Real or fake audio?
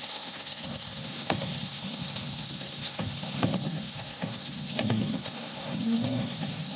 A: fake